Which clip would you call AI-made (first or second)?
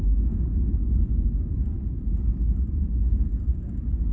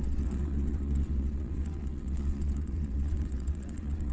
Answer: second